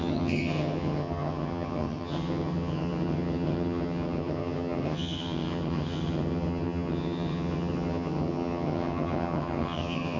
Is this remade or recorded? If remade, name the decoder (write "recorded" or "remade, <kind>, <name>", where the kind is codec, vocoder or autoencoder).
remade, vocoder, HiFi-GAN